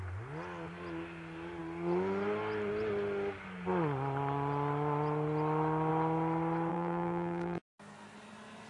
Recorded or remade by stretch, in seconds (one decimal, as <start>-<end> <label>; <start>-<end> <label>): 0.0-6.7 recorded; 6.7-7.6 remade; 7.6-8.7 recorded